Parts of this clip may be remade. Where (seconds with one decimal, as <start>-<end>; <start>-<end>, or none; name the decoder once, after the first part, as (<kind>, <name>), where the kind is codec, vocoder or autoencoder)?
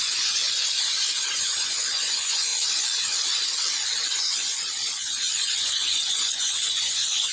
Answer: 0.0-0.4 (vocoder, Vocos); 1.3-2.5; 5.6-7.3